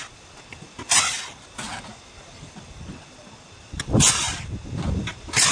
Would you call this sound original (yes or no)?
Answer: yes